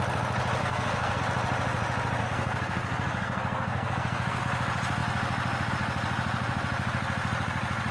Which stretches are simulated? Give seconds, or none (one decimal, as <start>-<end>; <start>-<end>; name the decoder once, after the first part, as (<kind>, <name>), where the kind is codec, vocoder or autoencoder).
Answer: 0.6-1.2 (codec, SNAC); 2.2-4.4